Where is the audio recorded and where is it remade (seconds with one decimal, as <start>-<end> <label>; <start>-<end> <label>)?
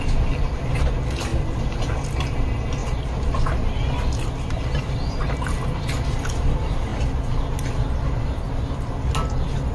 0.0-9.7 recorded